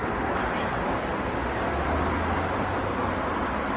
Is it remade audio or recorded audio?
recorded